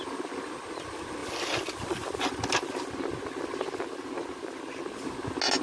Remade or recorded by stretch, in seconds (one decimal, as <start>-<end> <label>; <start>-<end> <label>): 0.0-5.6 recorded